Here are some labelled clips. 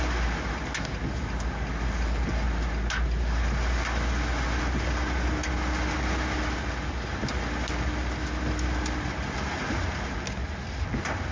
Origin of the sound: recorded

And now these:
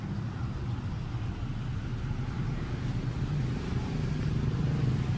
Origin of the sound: recorded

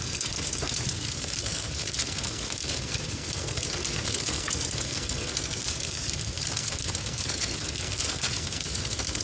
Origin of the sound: remade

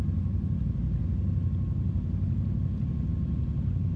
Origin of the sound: recorded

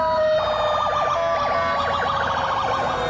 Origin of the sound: recorded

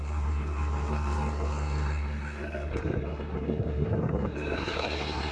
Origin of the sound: remade